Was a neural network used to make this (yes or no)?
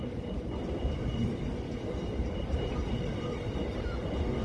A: no